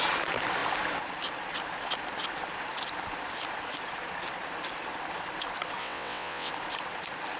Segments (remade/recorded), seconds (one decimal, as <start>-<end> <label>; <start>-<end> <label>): 0.0-5.8 recorded; 5.8-6.5 remade; 6.5-7.4 recorded